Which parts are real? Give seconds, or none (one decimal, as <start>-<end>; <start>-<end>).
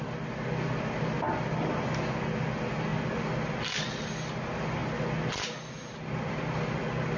0.0-7.2